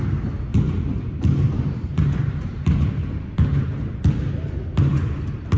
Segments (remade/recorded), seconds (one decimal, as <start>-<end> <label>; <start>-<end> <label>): 0.0-0.5 recorded; 0.5-3.9 remade; 3.9-5.6 recorded

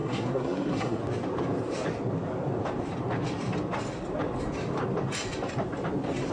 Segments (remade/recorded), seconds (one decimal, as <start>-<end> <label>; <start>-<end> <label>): 0.0-1.0 remade; 1.0-6.3 recorded

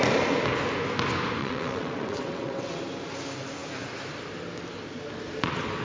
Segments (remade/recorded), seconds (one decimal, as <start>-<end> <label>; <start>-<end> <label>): 0.0-1.4 recorded; 1.4-2.8 remade; 2.8-5.8 recorded

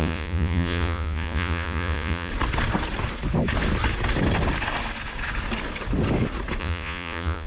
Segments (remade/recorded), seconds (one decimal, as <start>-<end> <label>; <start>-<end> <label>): 0.0-2.3 remade; 2.3-6.6 recorded; 6.6-7.5 remade

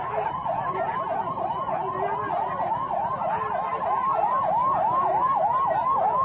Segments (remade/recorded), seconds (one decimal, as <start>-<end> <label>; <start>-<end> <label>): 0.0-3.7 recorded; 3.7-4.4 remade; 4.4-6.2 recorded

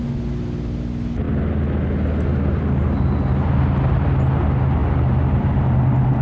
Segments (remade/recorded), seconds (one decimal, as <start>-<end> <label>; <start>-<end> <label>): 0.0-6.2 recorded

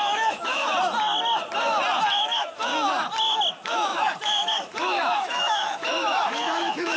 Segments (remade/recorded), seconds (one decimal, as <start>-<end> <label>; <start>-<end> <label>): 0.0-0.7 remade; 0.7-2.1 recorded; 2.1-2.7 remade; 2.7-3.5 recorded; 3.5-7.0 remade